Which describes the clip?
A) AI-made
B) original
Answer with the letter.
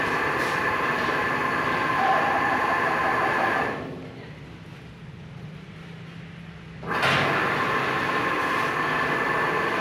B